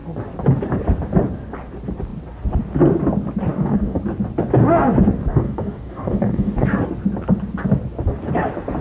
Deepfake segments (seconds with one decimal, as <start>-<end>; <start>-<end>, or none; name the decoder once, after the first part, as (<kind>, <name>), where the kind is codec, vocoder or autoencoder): 3.5-4.0 (codec, DAC); 5.3-6.7